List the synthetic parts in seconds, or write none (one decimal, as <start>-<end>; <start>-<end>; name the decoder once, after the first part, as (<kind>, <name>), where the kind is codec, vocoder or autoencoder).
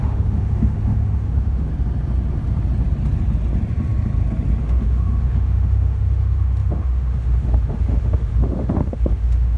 0.0-1.7 (autoencoder, DAC-VAE); 4.6-9.6